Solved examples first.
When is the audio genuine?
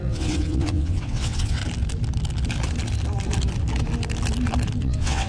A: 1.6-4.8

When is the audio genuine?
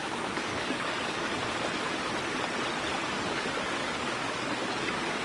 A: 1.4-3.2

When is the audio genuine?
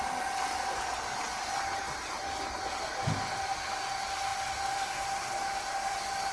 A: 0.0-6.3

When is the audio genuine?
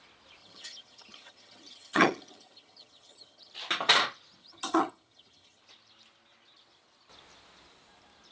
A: 0.0-0.4; 3.5-4.4; 5.6-8.3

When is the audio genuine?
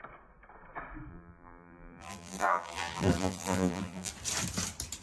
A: 0.0-1.1; 4.1-5.0